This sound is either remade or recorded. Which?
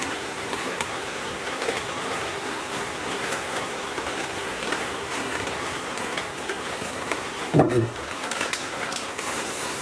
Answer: remade